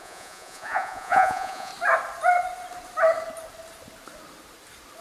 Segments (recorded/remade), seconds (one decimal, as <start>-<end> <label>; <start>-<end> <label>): 0.0-1.7 remade; 1.7-5.0 recorded